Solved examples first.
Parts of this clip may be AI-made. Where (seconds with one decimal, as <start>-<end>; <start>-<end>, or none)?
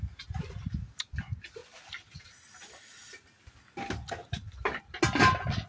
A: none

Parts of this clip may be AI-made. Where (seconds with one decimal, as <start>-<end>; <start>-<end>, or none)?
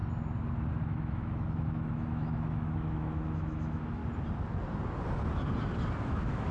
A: 0.8-4.0; 6.0-6.5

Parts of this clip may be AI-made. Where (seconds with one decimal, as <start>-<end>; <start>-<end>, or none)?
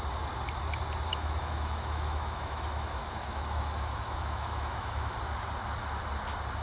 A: 1.1-5.1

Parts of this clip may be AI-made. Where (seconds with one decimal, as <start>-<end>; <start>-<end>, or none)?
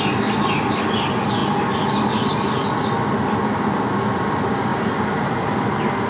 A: none